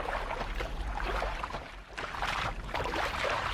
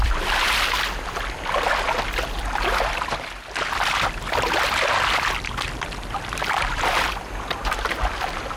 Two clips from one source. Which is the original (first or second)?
second